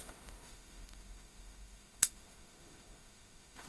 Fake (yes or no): yes